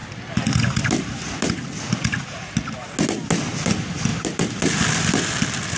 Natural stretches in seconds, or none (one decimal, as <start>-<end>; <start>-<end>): 0.0-5.8